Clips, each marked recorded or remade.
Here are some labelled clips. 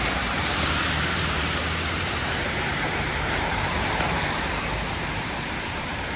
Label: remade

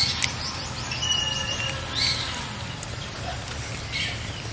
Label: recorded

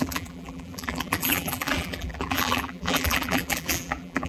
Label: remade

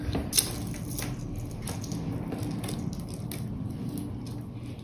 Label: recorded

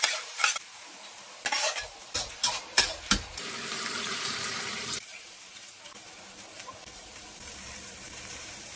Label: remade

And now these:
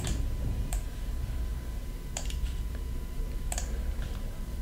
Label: remade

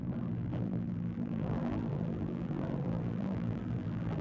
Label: remade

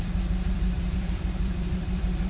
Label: remade